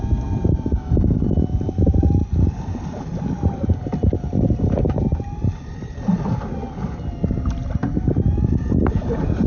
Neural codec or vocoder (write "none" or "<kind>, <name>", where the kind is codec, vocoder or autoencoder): none